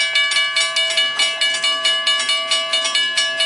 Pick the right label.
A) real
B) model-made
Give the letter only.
A